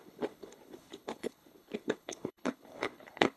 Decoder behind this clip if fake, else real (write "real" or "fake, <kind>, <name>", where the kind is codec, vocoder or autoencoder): fake, codec, HILCodec